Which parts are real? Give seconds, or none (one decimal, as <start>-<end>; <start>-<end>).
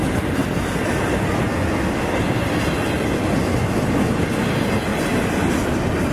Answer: 0.0-6.1